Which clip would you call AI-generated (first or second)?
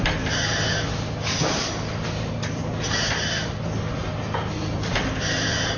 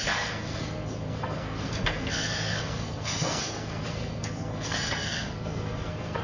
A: second